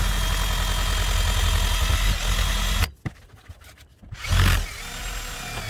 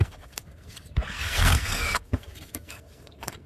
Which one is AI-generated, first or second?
second